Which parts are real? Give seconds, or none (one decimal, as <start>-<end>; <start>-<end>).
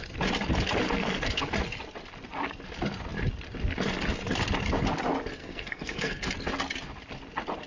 0.0-1.0; 1.5-5.4; 6.3-7.7